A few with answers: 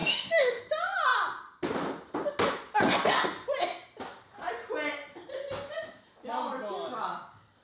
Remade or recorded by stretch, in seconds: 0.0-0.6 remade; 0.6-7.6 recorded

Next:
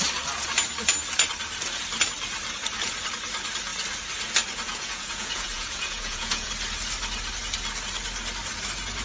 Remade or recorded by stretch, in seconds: 0.0-4.7 recorded; 4.7-6.5 remade; 6.5-9.0 recorded

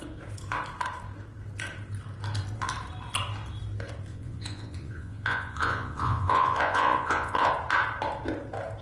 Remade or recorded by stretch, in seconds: 0.0-4.1 recorded; 4.1-7.5 remade; 7.5-8.8 recorded

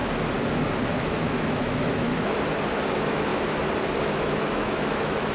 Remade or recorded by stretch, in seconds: 0.0-0.9 recorded; 0.9-2.1 remade; 2.1-2.9 recorded; 2.9-3.3 remade; 3.3-4.0 recorded; 4.0-5.3 remade

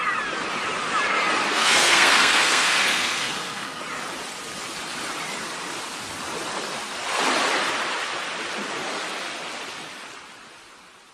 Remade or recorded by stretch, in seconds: 0.0-1.5 recorded; 1.5-3.8 remade; 3.8-11.1 recorded